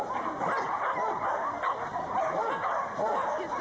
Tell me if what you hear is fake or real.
real